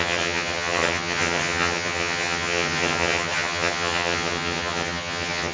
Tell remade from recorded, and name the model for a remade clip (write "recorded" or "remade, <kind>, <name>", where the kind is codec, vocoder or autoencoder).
remade, vocoder, HiFi-GAN